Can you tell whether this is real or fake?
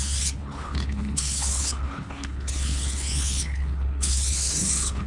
fake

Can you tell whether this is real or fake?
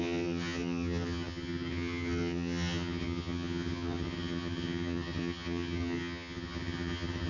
fake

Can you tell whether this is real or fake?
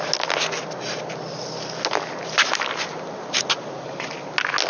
real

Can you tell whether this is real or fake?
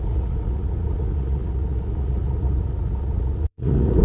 fake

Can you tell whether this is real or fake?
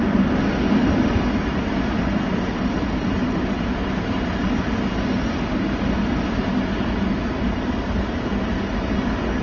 real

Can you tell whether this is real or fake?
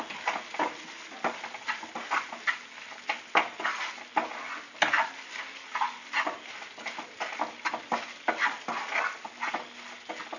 real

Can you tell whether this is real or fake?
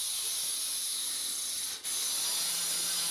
real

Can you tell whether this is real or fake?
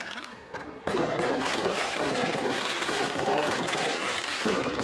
fake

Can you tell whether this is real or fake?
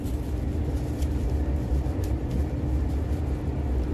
real